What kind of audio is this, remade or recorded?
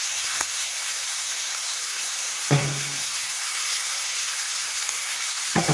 remade